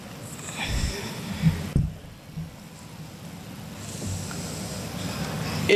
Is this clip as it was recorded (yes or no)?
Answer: yes